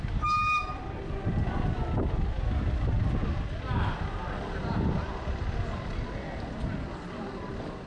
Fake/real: real